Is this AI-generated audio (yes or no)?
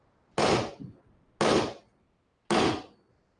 no